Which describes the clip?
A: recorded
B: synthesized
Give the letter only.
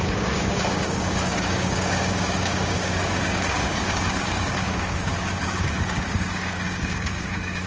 B